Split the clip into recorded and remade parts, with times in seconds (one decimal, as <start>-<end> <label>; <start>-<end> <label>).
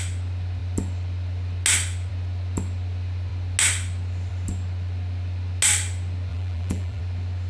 0.0-6.3 recorded; 6.3-7.0 remade; 7.0-7.5 recorded